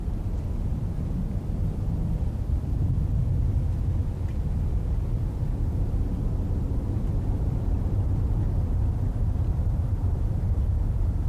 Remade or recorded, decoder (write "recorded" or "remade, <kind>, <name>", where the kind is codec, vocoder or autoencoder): remade, vocoder, BigVGAN v2